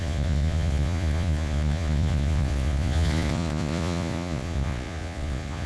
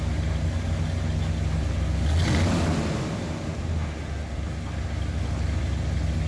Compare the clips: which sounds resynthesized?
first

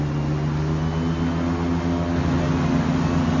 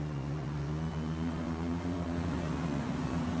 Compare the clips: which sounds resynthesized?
second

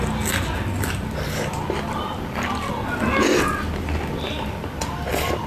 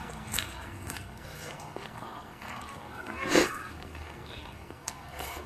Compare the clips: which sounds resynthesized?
second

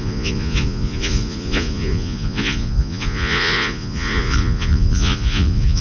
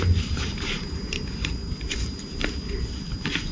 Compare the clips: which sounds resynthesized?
first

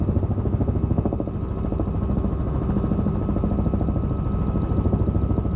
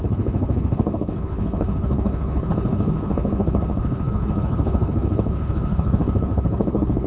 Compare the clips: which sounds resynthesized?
second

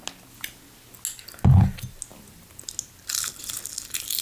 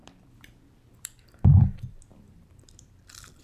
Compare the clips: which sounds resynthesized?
second